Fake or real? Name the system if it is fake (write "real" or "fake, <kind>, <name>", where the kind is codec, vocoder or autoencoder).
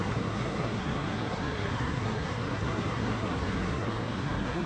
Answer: fake, codec, SNAC